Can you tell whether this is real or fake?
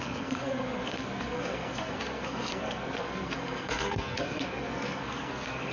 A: fake